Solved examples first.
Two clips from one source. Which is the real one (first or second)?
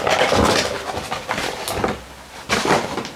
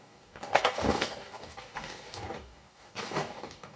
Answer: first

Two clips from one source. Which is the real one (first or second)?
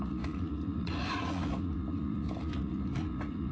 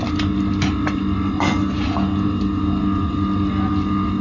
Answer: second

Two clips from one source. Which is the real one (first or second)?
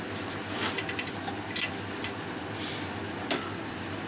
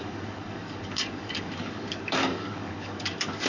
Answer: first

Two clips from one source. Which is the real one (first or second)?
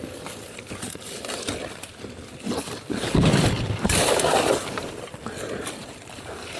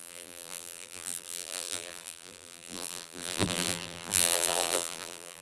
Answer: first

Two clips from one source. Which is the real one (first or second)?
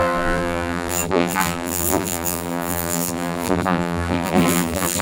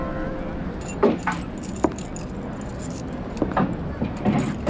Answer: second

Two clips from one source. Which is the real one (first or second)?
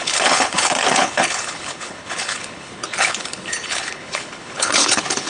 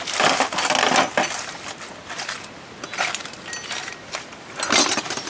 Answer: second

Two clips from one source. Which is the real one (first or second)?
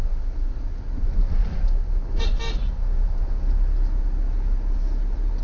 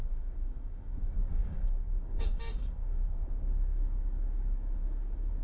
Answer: first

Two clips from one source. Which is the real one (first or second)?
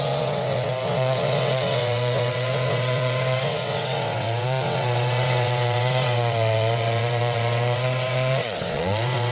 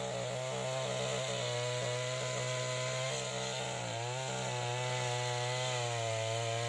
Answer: second